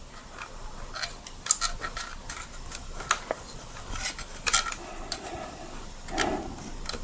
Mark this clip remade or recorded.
recorded